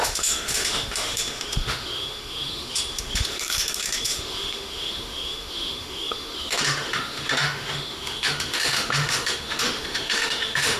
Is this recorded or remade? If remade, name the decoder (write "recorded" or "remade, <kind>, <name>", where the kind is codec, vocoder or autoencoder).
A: remade, autoencoder, DAC-VAE